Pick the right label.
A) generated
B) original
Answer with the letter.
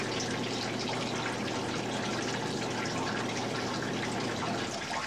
B